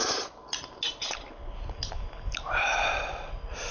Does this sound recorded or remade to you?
recorded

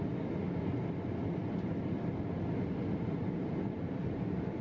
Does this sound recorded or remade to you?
recorded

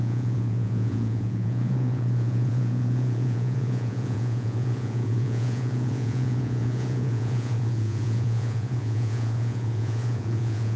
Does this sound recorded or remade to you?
remade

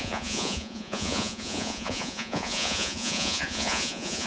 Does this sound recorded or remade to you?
remade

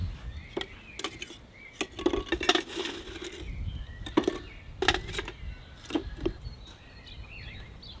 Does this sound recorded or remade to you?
recorded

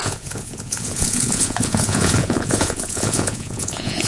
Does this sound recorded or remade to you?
remade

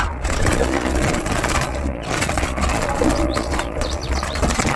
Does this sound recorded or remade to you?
remade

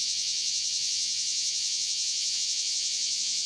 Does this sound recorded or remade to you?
remade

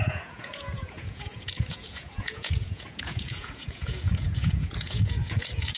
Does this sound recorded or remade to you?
remade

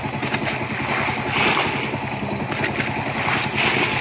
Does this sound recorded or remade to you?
recorded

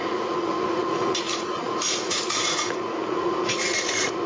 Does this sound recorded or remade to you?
remade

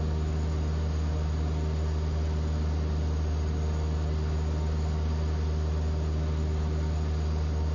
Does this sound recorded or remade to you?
recorded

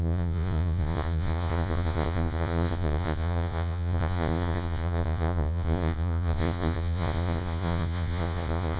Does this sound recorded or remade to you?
remade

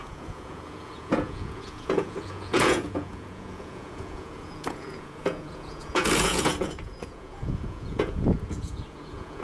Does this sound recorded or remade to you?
remade